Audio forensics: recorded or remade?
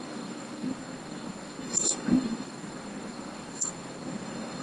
remade